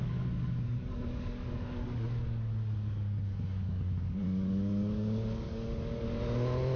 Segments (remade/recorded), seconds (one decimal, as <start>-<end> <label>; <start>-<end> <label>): 0.0-6.2 remade; 6.2-6.8 recorded